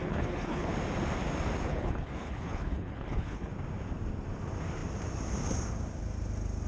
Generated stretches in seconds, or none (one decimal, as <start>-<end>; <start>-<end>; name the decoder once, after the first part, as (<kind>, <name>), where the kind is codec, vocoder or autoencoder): 0.0-0.7 (codec, HILCodec); 1.7-3.5